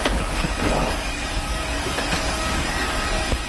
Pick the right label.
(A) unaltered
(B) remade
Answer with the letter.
B